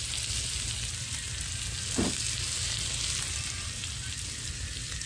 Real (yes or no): yes